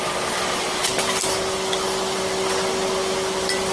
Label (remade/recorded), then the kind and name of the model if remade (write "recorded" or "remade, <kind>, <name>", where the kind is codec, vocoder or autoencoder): recorded